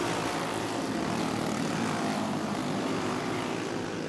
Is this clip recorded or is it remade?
remade